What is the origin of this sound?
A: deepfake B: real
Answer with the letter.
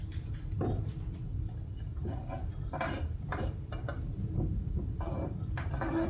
B